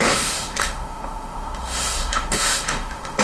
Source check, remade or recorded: remade